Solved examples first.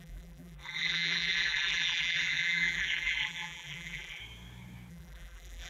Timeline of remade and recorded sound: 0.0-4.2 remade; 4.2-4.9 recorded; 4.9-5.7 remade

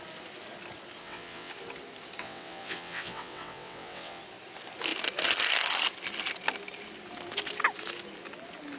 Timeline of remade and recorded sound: 0.0-1.0 recorded; 1.0-1.5 remade; 1.5-2.2 recorded; 2.2-4.2 remade; 4.2-8.8 recorded

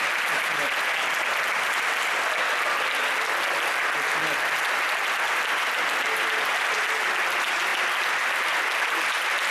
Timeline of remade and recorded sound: 0.0-9.5 recorded